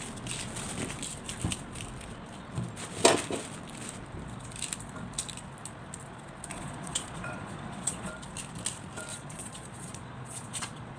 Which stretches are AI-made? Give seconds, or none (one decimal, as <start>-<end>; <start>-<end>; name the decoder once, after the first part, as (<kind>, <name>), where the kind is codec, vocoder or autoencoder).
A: 6.5-8.1 (vocoder, Vocos); 9.1-11.0